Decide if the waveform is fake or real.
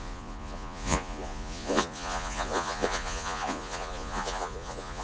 fake